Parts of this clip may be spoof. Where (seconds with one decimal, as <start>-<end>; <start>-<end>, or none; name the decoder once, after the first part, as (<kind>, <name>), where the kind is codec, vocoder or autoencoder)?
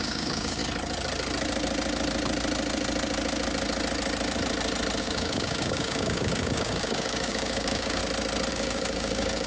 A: 0.0-0.6 (codec, DAC); 5.0-8.0; 8.5-9.5